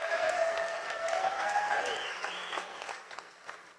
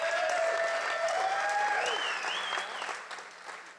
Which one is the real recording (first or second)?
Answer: second